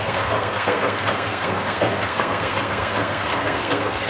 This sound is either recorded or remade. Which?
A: remade